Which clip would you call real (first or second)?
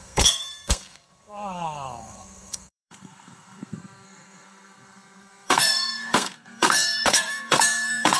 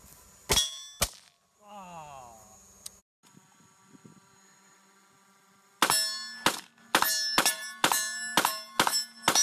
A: second